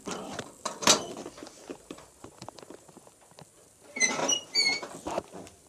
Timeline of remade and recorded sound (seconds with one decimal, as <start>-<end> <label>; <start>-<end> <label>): 0.0-1.4 recorded; 1.4-3.1 remade; 3.1-4.2 recorded; 4.2-4.9 remade; 4.9-5.7 recorded